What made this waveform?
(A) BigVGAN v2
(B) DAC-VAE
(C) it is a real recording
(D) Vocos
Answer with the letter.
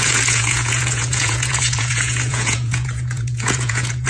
D